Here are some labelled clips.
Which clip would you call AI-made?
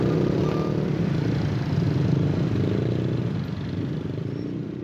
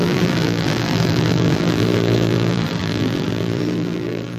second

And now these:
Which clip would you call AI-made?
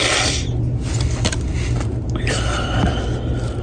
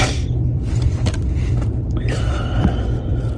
second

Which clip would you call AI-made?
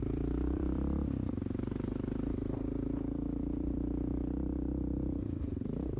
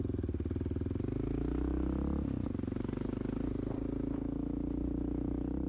first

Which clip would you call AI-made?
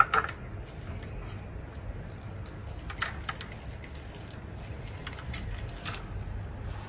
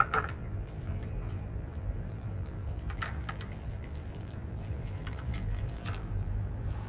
second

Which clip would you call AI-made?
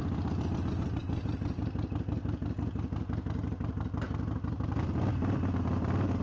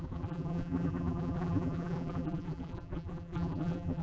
second